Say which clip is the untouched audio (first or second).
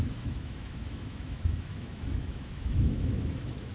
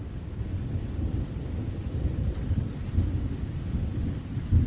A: second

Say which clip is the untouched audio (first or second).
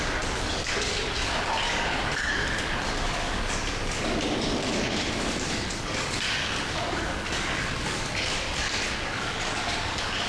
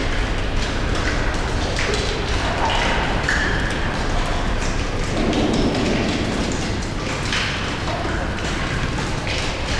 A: second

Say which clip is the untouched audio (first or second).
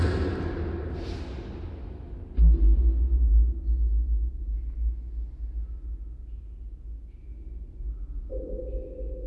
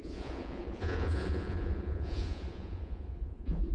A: first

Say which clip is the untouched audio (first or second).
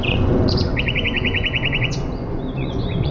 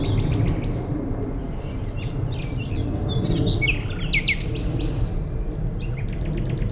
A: second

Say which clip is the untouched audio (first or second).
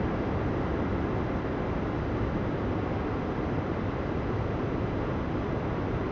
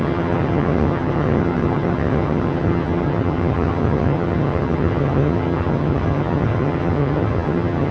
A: first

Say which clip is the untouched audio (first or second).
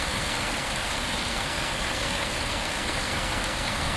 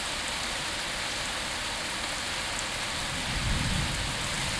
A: second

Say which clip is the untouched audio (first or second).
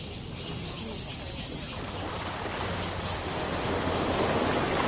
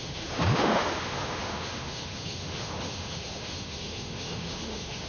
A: first